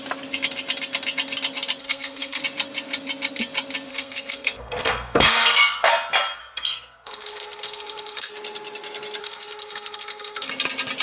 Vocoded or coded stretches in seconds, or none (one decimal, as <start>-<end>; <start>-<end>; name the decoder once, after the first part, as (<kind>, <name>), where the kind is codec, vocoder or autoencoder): 1.8-2.4 (codec, SNAC); 3.9-5.9; 6.4-8.3; 9.2-10.5